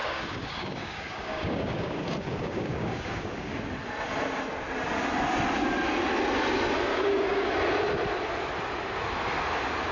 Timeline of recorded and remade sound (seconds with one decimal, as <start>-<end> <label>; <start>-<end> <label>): 0.0-3.6 remade; 3.6-6.9 recorded; 6.9-7.5 remade; 7.5-9.9 recorded